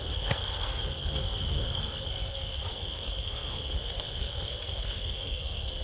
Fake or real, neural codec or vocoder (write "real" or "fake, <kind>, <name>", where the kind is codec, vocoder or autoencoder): fake, codec, SNAC